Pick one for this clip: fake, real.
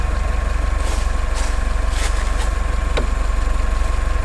real